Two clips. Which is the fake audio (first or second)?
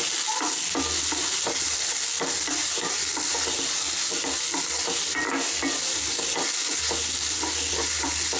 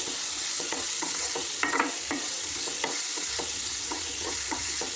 second